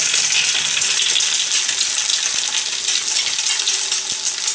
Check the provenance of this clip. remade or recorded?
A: recorded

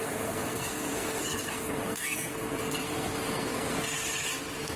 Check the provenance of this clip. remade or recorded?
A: remade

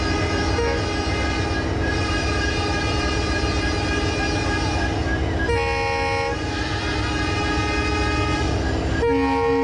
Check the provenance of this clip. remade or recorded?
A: recorded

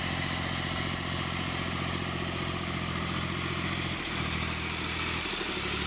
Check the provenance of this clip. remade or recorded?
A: recorded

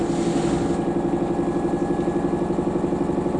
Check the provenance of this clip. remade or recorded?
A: recorded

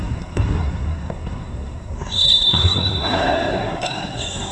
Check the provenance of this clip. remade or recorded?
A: remade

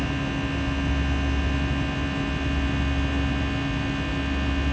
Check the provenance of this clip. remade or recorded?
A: recorded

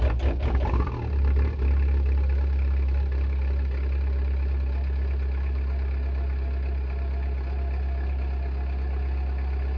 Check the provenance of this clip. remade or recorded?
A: recorded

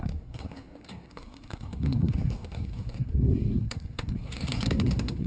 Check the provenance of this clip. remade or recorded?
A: remade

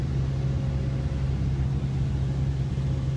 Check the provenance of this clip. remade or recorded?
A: recorded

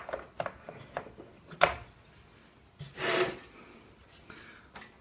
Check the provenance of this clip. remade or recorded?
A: recorded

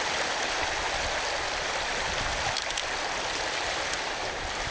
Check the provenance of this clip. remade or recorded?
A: recorded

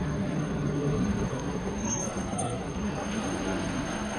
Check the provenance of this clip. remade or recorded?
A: remade